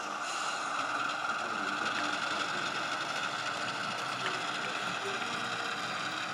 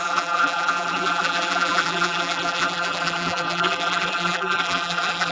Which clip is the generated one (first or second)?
second